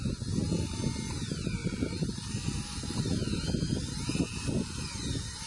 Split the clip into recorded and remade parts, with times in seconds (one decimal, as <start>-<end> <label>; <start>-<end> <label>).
0.0-1.6 recorded; 1.6-2.3 remade; 2.3-5.5 recorded